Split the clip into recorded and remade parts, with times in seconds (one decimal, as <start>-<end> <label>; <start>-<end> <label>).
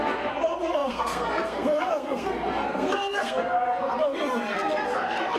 0.0-5.4 remade